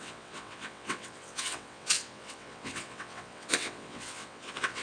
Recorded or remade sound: remade